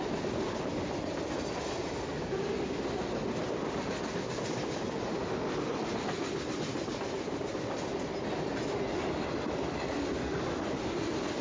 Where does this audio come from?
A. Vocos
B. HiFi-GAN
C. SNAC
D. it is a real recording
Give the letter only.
D